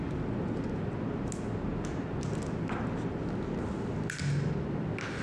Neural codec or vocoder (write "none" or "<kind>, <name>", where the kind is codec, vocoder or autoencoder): none